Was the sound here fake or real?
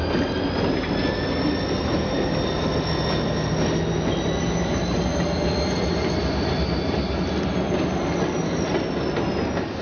real